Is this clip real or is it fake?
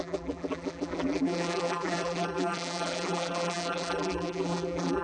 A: fake